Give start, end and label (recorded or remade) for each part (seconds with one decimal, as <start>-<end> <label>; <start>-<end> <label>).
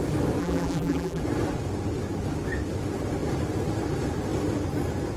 0.0-0.4 recorded; 0.4-1.2 remade; 1.2-5.2 recorded